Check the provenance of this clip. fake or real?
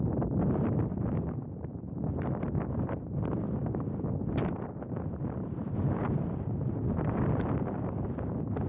fake